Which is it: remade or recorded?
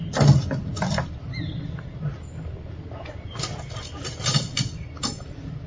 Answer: recorded